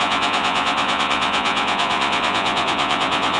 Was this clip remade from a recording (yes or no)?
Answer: yes